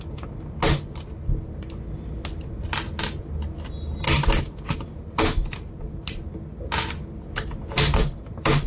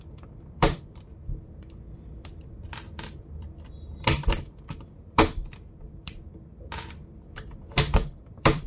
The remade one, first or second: second